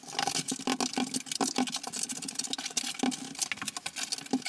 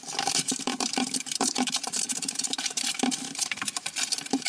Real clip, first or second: first